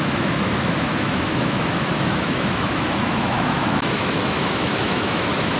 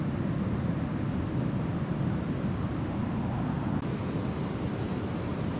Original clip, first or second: second